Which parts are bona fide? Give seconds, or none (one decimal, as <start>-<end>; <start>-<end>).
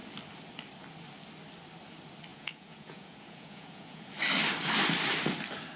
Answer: 0.0-2.3; 4.1-5.8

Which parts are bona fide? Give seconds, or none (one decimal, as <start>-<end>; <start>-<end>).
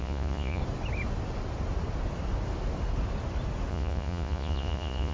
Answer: 0.6-3.7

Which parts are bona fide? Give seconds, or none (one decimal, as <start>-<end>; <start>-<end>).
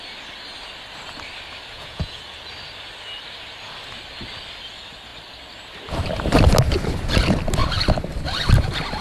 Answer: 0.0-1.7; 2.2-9.0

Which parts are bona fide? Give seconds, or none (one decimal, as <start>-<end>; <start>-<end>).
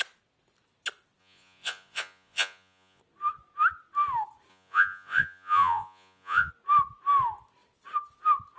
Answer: 0.0-1.2; 3.0-4.5; 6.5-8.6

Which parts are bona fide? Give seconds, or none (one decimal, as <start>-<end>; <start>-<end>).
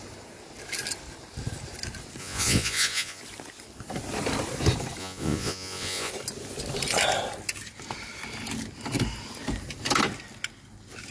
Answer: 0.0-2.2; 3.2-5.0; 6.1-11.1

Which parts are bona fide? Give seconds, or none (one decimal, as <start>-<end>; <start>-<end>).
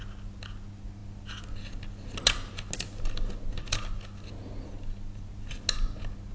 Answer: 0.0-6.3